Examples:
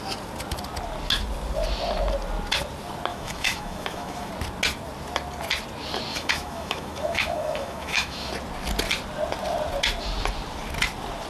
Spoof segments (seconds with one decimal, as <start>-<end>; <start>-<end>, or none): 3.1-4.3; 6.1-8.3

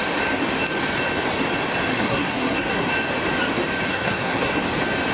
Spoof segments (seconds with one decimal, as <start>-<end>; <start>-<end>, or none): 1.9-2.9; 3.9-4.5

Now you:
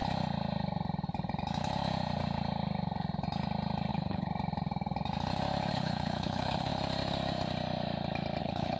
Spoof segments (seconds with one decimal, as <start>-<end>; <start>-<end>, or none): 3.9-4.3; 5.7-6.7; 8.4-8.8

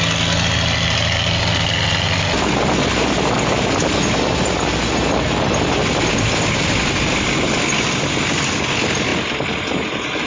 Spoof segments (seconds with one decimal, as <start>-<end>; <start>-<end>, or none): none

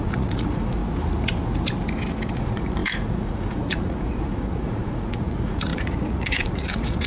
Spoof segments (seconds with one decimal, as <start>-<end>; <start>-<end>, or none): 0.0-0.8; 2.3-7.1

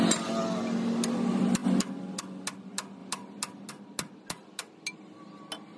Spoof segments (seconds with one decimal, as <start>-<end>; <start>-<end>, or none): none